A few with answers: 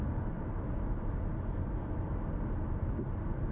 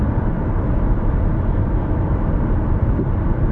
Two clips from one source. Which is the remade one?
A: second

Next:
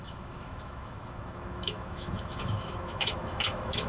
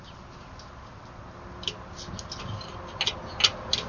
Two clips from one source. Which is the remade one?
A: first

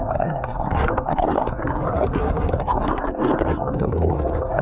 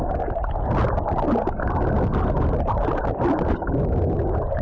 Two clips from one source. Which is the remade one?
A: first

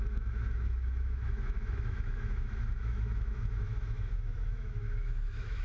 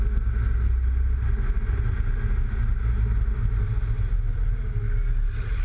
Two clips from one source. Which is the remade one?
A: first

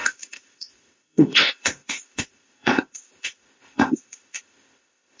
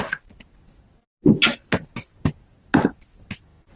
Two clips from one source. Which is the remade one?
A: first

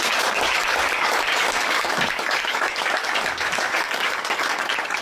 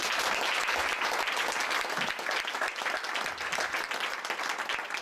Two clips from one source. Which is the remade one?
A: first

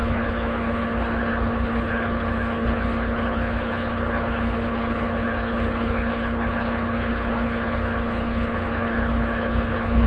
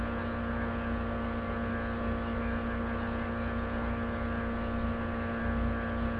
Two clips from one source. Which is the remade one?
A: first